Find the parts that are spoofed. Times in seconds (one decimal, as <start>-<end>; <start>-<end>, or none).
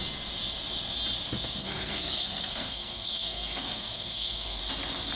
1.6-4.6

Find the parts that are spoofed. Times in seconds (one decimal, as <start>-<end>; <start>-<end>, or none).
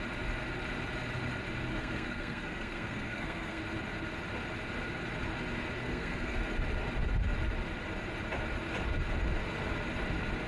1.7-3.6; 5.8-6.4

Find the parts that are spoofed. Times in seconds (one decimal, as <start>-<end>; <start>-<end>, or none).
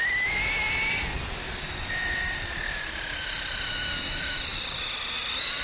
none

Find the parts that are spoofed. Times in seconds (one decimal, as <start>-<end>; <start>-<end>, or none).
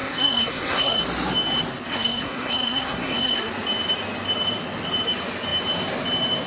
0.0-1.0; 1.9-3.5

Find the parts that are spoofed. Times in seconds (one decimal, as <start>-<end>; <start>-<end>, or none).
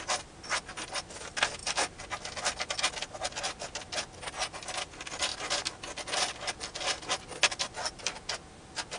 none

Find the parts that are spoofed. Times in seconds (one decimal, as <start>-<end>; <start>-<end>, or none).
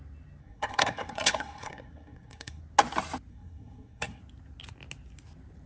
0.4-2.6; 3.3-4.2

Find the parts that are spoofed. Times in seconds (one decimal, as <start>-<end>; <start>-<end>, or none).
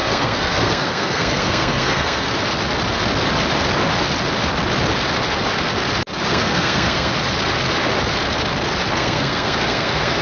0.0-2.3; 6.3-7.1; 8.9-10.2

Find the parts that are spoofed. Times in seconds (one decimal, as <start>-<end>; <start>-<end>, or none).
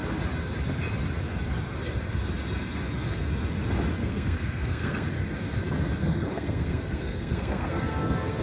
4.0-5.1; 6.0-8.4